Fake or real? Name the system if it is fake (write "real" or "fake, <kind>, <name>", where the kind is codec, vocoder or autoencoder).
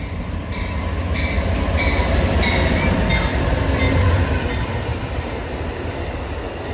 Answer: real